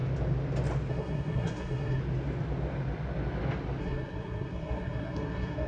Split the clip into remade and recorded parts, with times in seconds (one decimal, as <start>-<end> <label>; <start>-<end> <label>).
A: 0.0-0.9 recorded; 0.9-2.0 remade; 2.0-3.8 recorded; 3.8-5.7 remade